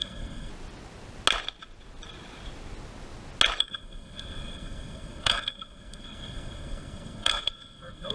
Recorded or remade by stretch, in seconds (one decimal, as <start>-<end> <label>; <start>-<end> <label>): 0.0-0.5 remade; 0.5-3.6 recorded; 3.6-8.1 remade